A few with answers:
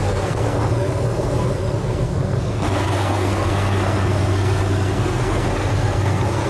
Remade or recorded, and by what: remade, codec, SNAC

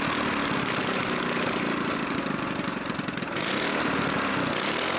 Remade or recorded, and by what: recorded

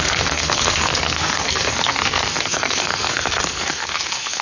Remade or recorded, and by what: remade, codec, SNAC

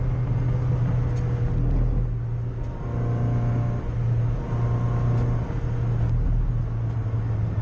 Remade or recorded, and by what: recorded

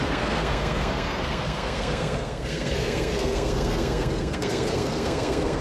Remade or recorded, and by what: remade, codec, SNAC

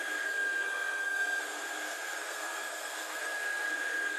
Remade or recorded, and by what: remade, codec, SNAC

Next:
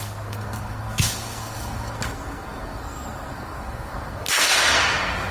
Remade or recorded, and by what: remade, codec, SNAC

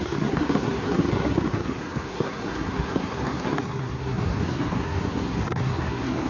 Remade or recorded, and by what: remade, codec, SNAC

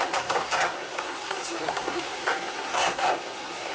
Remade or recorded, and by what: remade, codec, SNAC